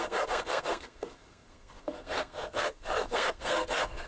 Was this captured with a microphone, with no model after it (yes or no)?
no